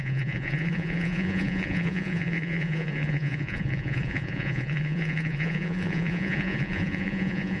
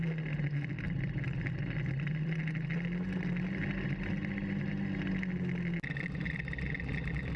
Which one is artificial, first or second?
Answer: first